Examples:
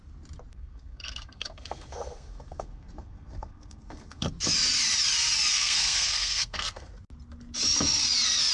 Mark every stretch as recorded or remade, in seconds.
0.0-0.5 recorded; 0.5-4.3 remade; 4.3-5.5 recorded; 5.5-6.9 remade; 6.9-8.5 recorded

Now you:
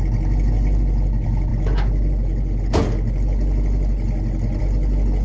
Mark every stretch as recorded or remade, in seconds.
0.0-5.2 recorded

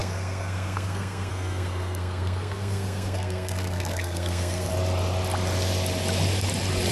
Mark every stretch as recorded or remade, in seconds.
0.0-4.7 remade; 4.7-6.9 recorded

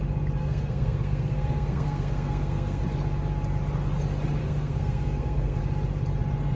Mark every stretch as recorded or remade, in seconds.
0.0-0.4 recorded; 0.4-2.8 remade; 2.8-4.4 recorded; 4.4-5.6 remade; 5.6-6.6 recorded

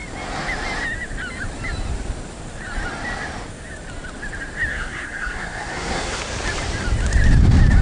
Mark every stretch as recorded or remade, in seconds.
0.0-4.7 recorded; 4.7-6.2 remade; 6.2-7.8 recorded

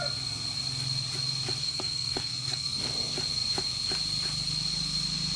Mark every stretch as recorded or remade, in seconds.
0.0-1.6 recorded; 1.6-2.8 remade; 2.8-5.4 recorded